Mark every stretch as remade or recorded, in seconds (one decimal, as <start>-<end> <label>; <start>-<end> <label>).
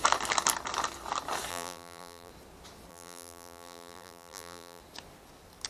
0.0-1.5 recorded; 1.5-2.3 remade; 2.3-2.9 recorded; 2.9-4.8 remade; 4.8-5.7 recorded